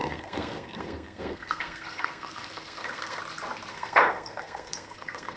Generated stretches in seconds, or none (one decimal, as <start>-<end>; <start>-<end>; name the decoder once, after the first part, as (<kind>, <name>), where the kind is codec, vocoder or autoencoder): 0.0-3.2 (codec, SNAC); 3.7-5.4